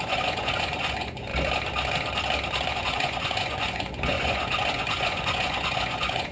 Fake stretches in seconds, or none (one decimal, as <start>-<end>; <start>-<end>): 0.0-1.3; 2.7-6.3